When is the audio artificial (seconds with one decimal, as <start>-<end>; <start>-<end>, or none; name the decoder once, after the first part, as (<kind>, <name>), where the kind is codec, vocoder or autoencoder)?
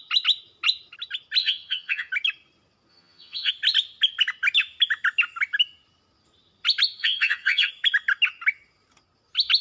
1.4-2.1 (vocoder, HiFi-GAN); 2.9-3.5; 7.0-7.7